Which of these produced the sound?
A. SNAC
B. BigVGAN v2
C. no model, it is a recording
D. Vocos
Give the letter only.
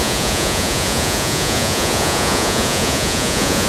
D